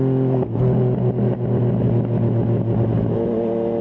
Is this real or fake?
real